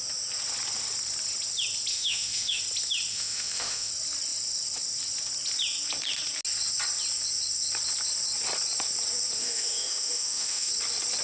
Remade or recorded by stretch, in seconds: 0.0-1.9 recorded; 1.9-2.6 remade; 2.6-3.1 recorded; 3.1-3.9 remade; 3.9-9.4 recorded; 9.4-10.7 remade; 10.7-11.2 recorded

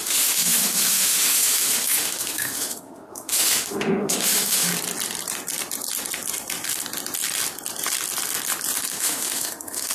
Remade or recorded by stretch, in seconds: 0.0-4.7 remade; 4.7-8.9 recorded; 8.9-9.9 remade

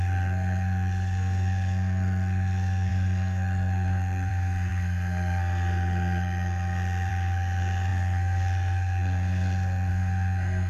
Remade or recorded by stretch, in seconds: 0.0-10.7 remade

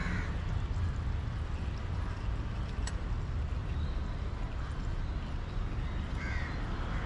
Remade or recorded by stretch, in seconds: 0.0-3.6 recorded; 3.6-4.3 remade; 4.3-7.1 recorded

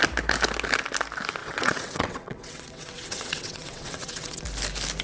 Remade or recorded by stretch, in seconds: 0.0-1.4 recorded; 1.4-4.4 remade; 4.4-5.0 recorded